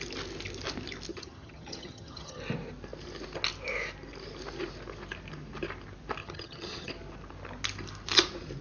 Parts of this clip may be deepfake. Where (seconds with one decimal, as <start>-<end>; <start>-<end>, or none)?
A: 1.1-2.4; 6.2-6.9